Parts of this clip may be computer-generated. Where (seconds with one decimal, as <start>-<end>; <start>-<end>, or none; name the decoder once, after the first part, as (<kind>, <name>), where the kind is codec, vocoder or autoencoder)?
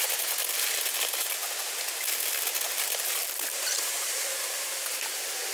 0.0-0.4 (vocoder, BigVGAN v2); 3.7-5.5